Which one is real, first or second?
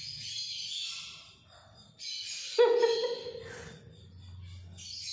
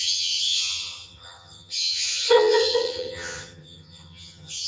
first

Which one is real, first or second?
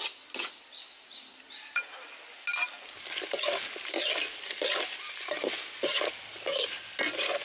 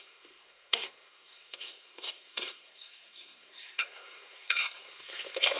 first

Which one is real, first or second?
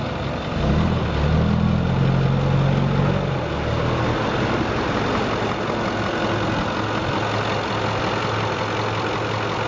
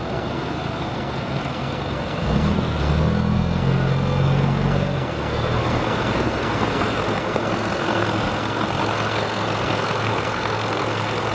first